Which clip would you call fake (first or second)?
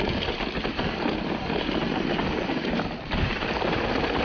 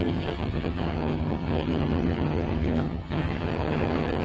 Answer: second